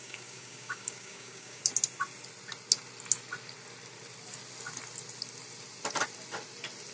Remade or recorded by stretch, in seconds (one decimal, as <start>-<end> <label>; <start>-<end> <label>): 0.0-1.6 remade; 1.6-6.9 recorded